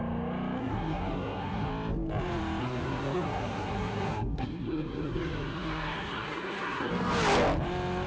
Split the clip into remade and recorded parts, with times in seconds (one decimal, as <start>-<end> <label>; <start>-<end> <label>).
0.0-0.6 recorded; 0.6-1.7 remade; 1.7-2.6 recorded; 2.6-6.9 remade; 6.9-8.1 recorded